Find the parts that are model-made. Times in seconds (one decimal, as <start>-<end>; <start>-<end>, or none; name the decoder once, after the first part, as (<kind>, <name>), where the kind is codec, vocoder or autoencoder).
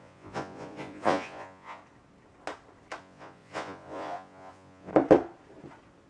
0.0-1.8 (vocoder, Vocos); 3.0-4.9